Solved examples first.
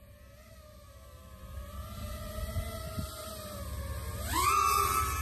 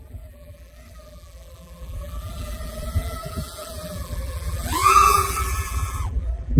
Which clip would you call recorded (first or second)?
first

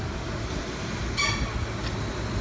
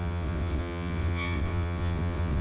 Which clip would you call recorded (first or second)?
first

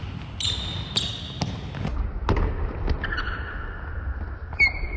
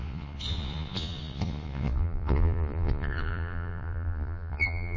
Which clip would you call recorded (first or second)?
first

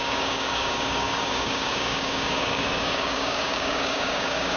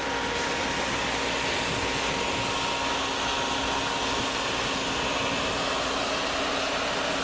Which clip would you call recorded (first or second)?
second